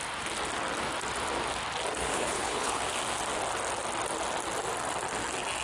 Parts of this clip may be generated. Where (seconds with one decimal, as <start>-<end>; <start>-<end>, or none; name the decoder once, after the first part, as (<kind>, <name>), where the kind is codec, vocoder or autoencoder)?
2.0-2.8 (codec, HILCodec)